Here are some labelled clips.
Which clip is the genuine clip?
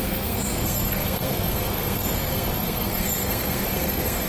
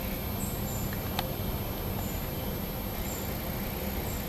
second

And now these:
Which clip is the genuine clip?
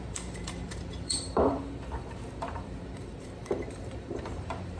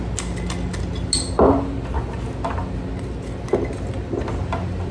second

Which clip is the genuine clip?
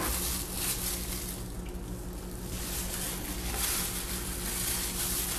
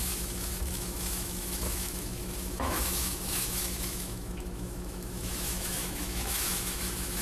first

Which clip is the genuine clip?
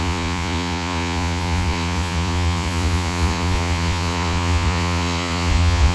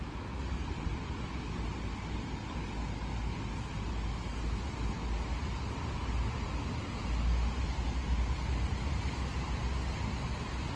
second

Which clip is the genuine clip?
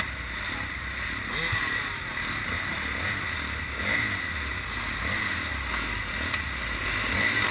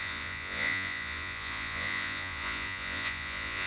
first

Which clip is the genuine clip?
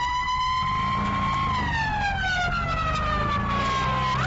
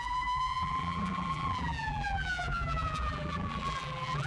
first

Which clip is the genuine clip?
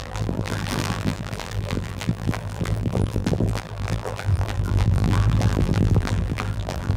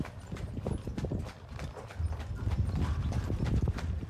second